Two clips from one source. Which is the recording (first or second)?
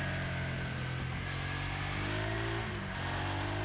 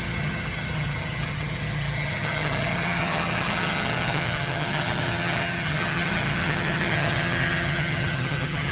first